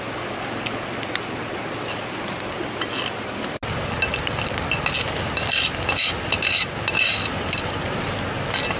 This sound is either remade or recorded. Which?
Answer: recorded